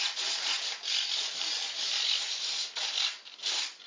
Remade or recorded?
recorded